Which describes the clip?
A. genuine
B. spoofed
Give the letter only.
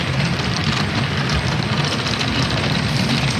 A